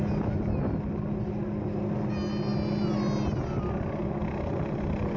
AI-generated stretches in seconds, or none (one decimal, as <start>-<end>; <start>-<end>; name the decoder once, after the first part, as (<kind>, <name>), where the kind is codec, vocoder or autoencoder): none